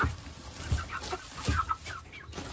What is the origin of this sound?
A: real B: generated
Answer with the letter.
A